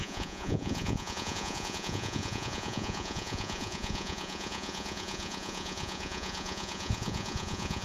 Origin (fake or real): fake